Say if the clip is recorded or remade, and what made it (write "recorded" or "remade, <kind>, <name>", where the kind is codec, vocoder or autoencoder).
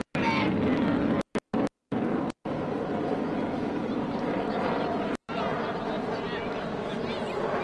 recorded